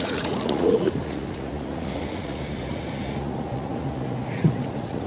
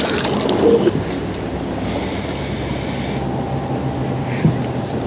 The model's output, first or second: first